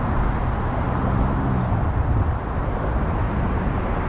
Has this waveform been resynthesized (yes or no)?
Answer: no